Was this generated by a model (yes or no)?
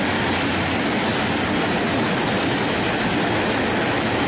no